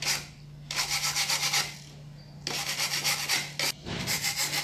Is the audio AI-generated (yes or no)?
no